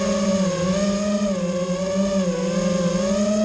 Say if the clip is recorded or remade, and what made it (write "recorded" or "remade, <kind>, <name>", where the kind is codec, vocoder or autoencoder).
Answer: recorded